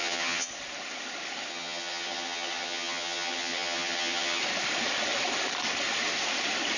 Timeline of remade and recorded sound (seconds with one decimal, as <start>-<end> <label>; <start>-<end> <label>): 0.0-0.5 remade; 0.5-1.5 recorded; 1.5-4.4 remade; 4.4-6.8 recorded